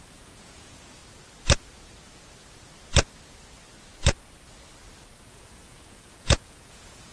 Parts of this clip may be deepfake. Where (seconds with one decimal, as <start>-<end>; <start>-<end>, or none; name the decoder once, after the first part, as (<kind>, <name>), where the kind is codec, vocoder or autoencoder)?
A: 0.0-1.0 (vocoder, Vocos); 5.3-7.1